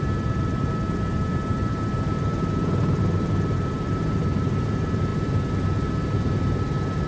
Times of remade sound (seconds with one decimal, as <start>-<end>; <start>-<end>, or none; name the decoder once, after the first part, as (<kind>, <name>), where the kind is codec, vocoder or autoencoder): 0.0-7.1 (vocoder, BigVGAN v2)